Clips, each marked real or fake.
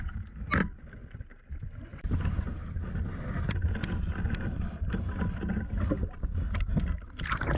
real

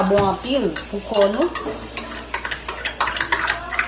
real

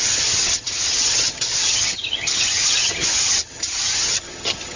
fake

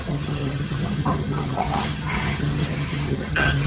fake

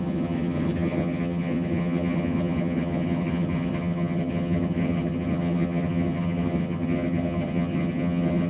fake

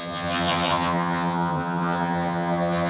fake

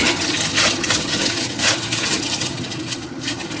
fake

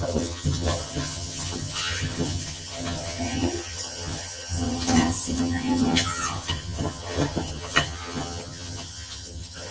fake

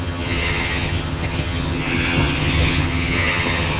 fake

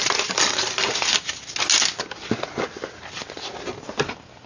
real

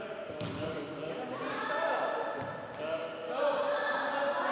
real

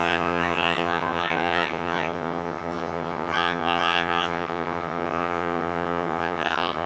fake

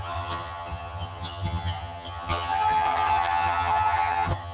fake